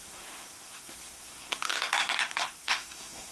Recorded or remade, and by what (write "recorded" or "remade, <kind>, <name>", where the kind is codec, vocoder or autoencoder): remade, codec, SNAC